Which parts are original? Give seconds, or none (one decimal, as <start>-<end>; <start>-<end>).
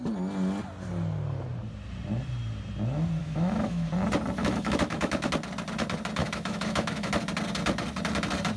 0.0-3.2; 3.9-4.4; 5.3-6.2; 7.1-8.6